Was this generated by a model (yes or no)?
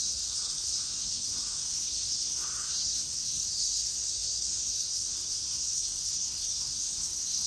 yes